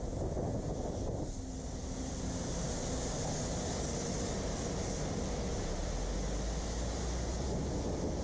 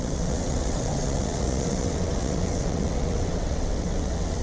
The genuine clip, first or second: first